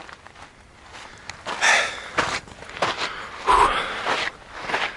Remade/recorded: recorded